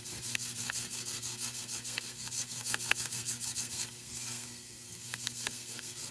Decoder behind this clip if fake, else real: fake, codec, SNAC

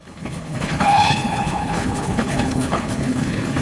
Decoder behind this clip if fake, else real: fake, codec, HILCodec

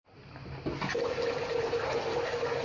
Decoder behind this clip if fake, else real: real